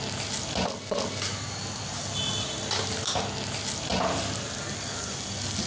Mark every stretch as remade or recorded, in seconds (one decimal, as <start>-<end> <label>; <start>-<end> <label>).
0.0-5.7 recorded